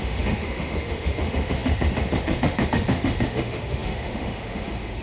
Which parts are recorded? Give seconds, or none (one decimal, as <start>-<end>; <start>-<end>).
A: none

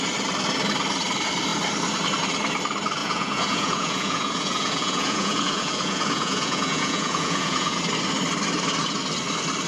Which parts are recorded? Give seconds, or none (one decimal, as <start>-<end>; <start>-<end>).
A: 0.0-3.0; 7.8-9.7

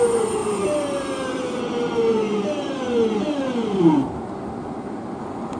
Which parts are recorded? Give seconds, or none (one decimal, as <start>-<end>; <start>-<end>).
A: 0.0-5.6